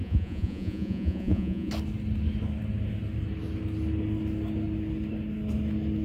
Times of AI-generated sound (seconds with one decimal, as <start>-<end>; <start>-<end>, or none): 0.0-1.7